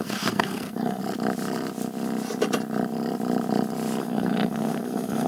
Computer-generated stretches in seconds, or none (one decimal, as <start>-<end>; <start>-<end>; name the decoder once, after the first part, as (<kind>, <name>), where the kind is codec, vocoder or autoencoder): 0.0-1.0 (codec, SNAC); 4.0-5.3